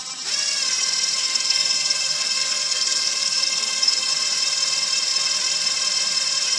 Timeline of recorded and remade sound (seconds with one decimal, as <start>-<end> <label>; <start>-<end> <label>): 0.0-1.2 recorded; 1.2-4.1 remade; 4.1-6.6 recorded